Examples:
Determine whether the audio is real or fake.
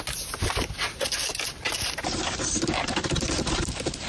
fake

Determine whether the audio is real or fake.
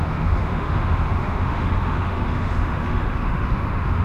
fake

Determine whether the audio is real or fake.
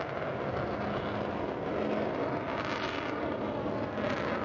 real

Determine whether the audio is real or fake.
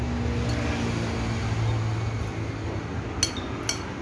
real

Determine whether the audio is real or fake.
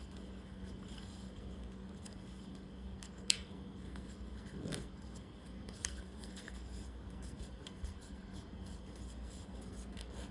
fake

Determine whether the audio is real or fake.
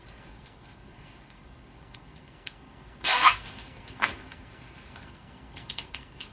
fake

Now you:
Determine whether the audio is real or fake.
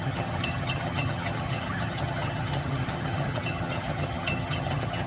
fake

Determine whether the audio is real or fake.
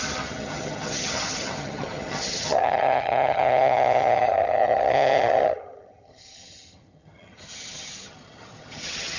fake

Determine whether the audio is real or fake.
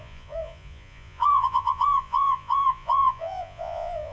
fake